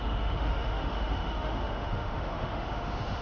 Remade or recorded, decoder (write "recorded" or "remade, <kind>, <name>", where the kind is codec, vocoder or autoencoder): remade, autoencoder, DAC-VAE